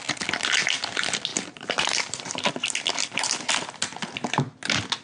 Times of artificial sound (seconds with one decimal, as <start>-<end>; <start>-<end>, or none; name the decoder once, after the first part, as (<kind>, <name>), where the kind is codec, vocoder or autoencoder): 1.3-2.3 (vocoder, BigVGAN v2)